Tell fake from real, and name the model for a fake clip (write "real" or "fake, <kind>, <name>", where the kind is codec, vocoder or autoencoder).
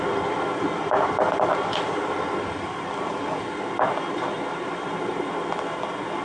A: real